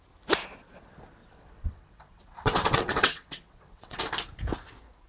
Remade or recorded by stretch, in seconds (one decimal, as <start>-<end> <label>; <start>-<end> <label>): 0.0-1.2 recorded; 1.2-4.0 remade; 4.0-5.1 recorded